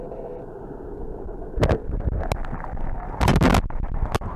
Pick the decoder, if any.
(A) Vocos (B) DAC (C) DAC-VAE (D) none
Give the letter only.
D